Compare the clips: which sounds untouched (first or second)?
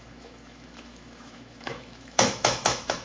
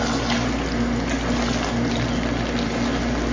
second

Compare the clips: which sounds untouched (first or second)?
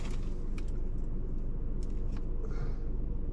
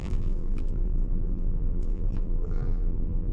first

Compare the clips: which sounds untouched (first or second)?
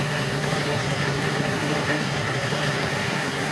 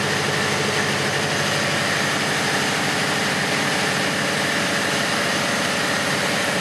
second